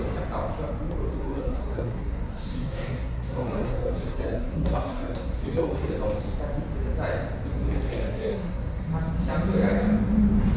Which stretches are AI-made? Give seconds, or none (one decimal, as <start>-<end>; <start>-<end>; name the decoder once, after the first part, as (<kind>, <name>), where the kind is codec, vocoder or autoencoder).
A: 1.1-5.9 (codec, SNAC); 7.5-8.9